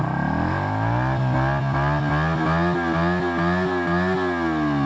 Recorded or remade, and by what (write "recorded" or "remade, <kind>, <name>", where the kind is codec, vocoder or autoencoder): recorded